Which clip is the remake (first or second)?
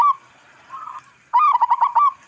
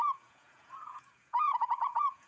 second